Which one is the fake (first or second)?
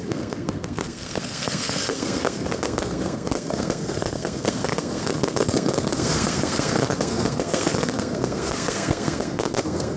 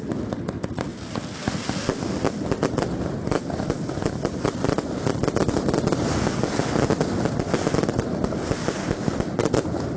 first